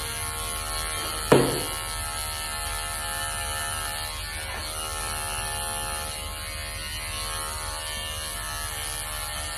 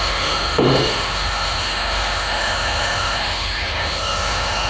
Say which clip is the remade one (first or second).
second